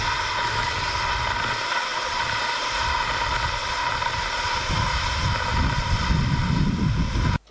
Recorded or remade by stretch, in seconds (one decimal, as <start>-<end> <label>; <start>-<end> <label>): 0.0-7.5 recorded